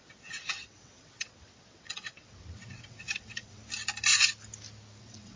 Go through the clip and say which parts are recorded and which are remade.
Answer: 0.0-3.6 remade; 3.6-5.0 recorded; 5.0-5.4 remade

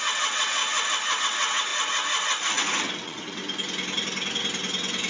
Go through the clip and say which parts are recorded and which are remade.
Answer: 0.0-0.6 remade; 0.6-1.2 recorded; 1.2-1.7 remade; 1.7-2.8 recorded; 2.8-3.4 remade; 3.4-5.1 recorded

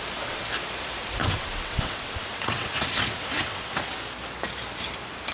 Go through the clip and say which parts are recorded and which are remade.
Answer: 0.0-1.2 recorded; 1.2-4.0 remade; 4.0-5.3 recorded

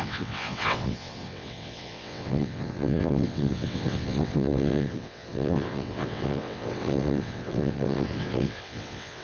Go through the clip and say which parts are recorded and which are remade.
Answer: 0.0-9.2 remade

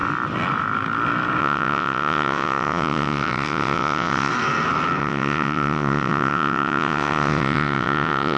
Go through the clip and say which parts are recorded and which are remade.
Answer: 0.0-1.4 recorded; 1.4-4.3 remade; 4.3-5.0 recorded; 5.0-8.4 remade

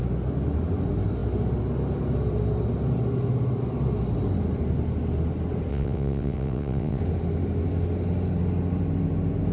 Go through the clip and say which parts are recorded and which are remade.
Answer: 0.0-5.7 recorded; 5.7-7.0 remade; 7.0-9.5 recorded

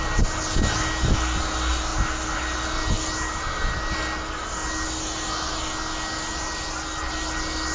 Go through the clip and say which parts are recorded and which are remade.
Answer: 0.0-7.7 recorded